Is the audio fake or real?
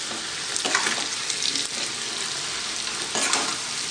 real